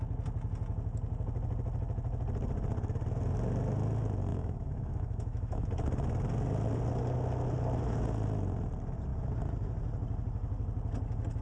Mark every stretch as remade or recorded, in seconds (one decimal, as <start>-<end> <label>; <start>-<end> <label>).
0.0-4.3 recorded; 4.3-5.7 remade; 5.7-11.4 recorded